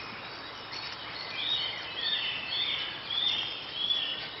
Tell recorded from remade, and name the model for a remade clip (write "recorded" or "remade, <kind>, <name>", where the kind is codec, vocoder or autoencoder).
remade, vocoder, BigVGAN v2